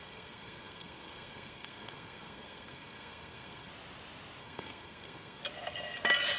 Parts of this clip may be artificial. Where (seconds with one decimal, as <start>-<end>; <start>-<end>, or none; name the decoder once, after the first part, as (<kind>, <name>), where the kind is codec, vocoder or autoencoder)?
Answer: 0.0-3.7 (codec, SNAC); 4.4-5.4